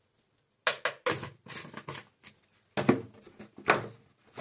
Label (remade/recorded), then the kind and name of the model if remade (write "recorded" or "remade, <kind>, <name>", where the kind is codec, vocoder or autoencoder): recorded